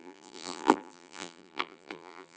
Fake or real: fake